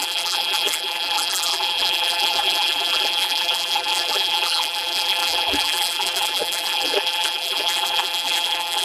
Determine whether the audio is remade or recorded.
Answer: remade